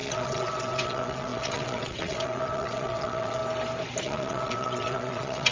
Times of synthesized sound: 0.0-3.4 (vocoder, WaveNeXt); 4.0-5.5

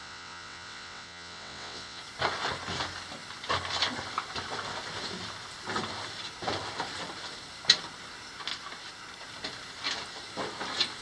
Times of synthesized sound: 0.0-2.0 (vocoder, WaveNeXt)